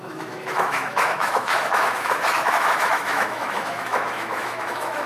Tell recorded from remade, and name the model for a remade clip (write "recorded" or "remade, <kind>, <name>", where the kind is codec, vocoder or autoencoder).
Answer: remade, autoencoder, DAC-VAE